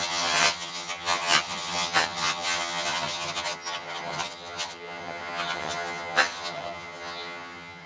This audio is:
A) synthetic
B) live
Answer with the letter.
A